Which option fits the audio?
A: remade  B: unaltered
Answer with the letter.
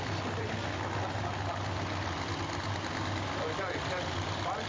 B